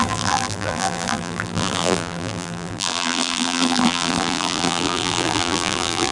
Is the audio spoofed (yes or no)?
yes